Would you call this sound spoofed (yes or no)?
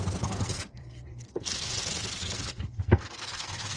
yes